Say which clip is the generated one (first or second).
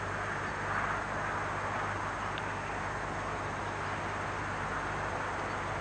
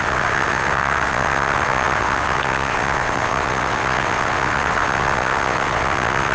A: second